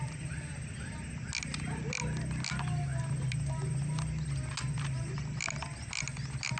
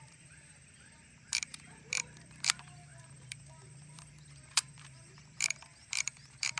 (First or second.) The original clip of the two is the first